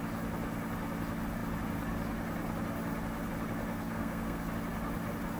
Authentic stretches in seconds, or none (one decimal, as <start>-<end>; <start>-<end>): 0.0-3.7; 4.5-5.4